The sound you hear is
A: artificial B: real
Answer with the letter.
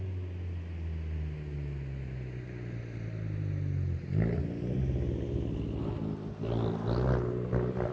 B